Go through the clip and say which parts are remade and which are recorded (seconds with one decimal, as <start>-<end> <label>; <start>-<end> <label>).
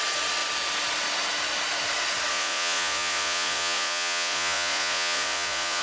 0.0-2.3 recorded; 2.3-5.8 remade